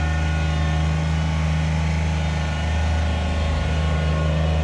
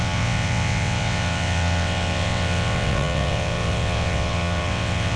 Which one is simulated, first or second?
second